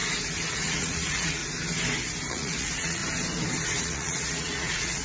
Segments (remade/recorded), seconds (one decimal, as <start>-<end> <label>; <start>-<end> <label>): 0.0-0.5 recorded; 0.5-1.4 remade; 1.4-2.3 recorded; 2.3-3.0 remade; 3.0-3.8 recorded; 3.8-5.0 remade